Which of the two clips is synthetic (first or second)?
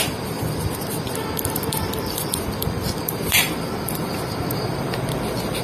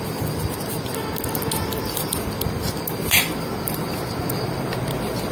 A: first